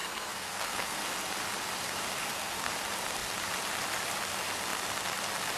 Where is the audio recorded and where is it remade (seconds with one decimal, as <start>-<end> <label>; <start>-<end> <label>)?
0.0-1.0 remade; 1.0-2.2 recorded; 2.2-2.7 remade; 2.7-5.6 recorded